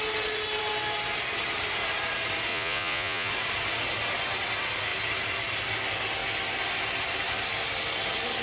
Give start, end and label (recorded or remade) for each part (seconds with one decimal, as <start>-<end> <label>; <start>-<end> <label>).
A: 0.0-2.5 recorded; 2.5-3.3 remade; 3.3-8.4 recorded